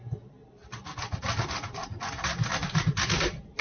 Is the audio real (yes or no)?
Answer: no